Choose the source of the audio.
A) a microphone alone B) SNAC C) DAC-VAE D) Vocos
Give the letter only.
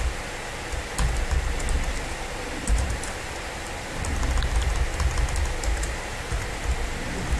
A